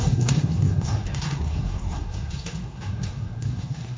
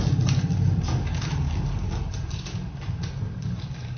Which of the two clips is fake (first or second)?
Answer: first